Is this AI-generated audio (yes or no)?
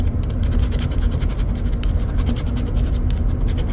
no